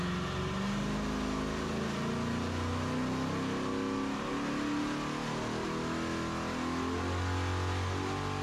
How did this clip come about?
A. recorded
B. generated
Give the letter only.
A